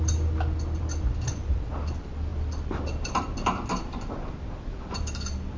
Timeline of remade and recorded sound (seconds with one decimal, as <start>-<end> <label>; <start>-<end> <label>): 0.0-5.6 recorded